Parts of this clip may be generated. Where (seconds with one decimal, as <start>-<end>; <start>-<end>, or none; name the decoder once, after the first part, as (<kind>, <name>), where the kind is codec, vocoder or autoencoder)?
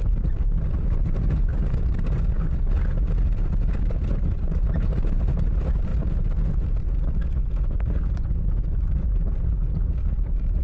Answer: 0.0-1.5 (vocoder, BigVGAN v2); 3.9-5.9; 8.1-10.6